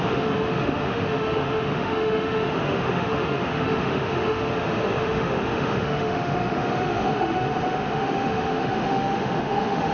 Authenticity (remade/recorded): remade